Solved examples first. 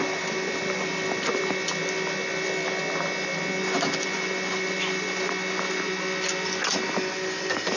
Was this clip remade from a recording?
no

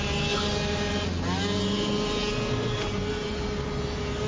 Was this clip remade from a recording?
no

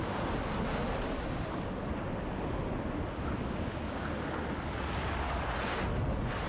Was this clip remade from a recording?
no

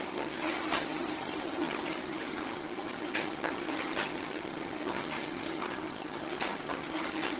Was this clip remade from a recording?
yes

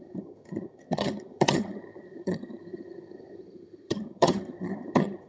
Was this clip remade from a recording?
yes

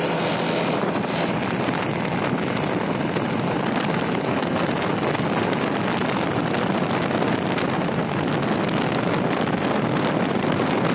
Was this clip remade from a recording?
no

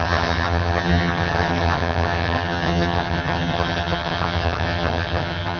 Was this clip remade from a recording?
yes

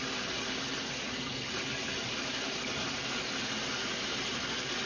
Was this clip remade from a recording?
no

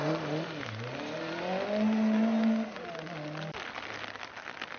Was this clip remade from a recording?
no